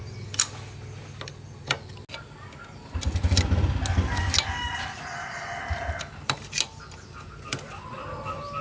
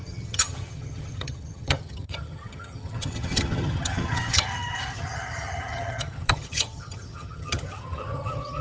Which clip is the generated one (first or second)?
second